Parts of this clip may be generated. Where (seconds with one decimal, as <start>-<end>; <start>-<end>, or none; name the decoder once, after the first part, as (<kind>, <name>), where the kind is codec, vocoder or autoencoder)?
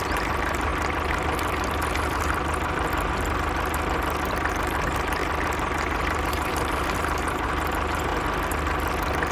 0.0-0.7 (vocoder, BigVGAN v2); 4.5-5.2; 6.3-8.1